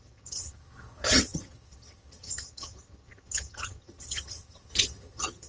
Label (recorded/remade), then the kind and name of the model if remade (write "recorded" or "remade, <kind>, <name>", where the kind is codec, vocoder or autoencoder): remade, vocoder, HiFi-GAN